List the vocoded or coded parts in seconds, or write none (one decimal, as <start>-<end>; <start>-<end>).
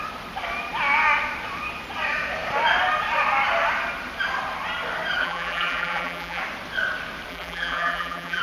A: 5.2-6.4; 7.3-8.4